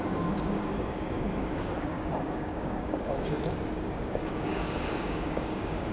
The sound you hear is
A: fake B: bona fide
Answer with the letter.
A